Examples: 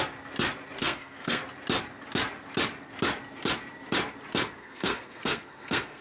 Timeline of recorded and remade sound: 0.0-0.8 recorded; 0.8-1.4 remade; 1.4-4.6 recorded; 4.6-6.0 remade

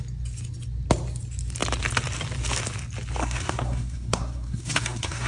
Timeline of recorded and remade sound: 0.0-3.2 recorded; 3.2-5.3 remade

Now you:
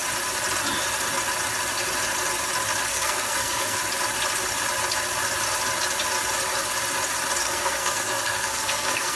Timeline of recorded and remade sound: 0.0-2.9 recorded; 2.9-3.8 remade; 3.8-7.4 recorded; 7.4-9.2 remade